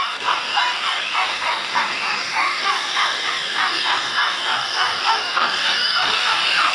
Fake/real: fake